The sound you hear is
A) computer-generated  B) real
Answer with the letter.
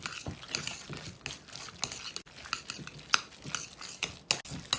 B